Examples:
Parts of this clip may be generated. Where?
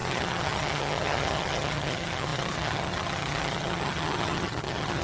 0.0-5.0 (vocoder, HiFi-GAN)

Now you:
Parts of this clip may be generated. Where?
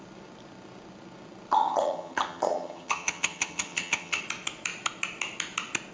1.5-4.2 (vocoder, HiFi-GAN)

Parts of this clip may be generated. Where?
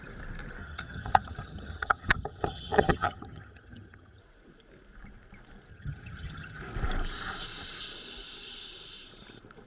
0.6-4.2 (vocoder, HiFi-GAN); 5.7-6.6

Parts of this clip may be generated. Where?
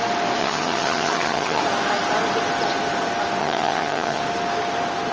0.4-1.6 (vocoder, HiFi-GAN); 3.4-4.2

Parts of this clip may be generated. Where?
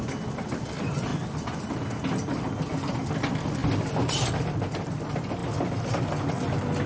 none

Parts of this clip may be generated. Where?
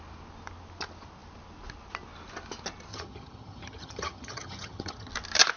2.9-5.1 (vocoder, HiFi-GAN)